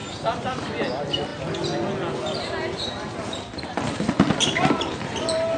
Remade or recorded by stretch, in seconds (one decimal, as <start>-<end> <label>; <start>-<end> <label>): 0.0-5.6 recorded